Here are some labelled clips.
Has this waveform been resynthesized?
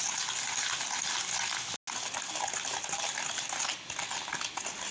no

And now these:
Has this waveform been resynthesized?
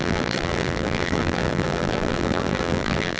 yes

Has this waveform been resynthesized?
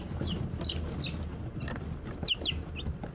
no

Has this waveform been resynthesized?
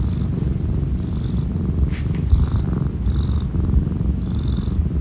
no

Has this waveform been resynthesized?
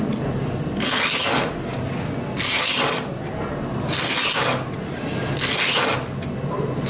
no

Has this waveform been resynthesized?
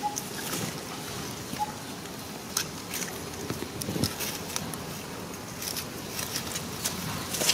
no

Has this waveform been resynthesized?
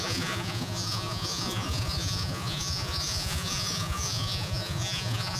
yes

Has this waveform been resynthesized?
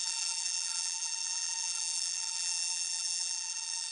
yes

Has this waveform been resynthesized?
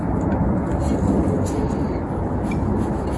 no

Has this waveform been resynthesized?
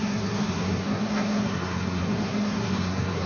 yes